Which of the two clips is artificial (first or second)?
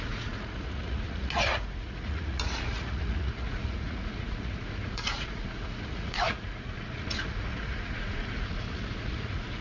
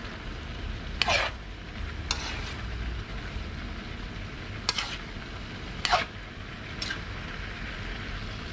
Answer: first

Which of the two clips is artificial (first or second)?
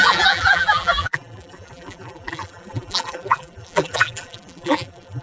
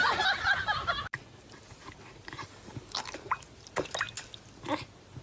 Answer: first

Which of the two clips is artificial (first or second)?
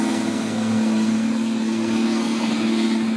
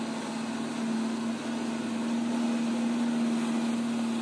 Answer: first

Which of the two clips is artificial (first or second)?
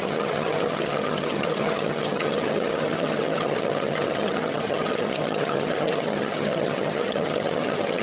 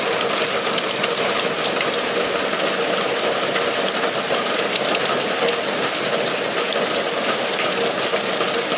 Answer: first